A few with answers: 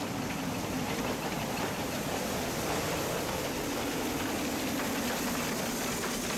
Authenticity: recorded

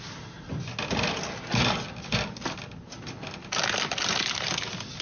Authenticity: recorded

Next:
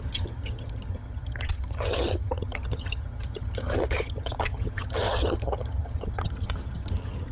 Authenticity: remade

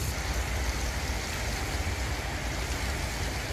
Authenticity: recorded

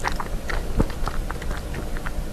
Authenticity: recorded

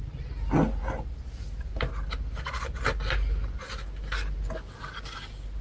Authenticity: recorded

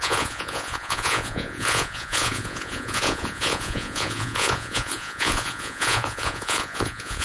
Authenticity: remade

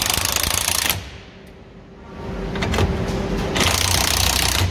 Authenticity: recorded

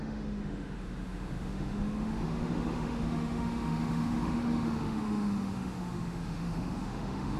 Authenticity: remade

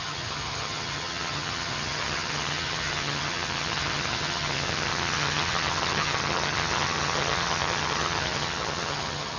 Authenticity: remade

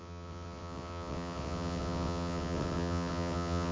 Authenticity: remade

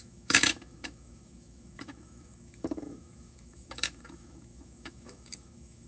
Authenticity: remade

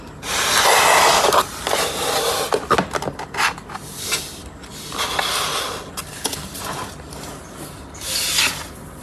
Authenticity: recorded